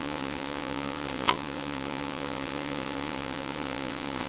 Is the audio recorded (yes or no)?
no